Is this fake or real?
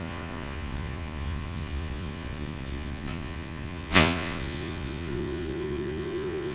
fake